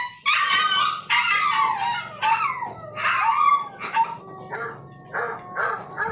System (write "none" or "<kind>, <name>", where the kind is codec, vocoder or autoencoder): none